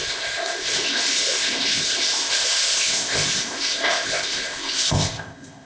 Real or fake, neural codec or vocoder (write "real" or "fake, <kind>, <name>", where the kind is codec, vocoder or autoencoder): fake, codec, ZipCodec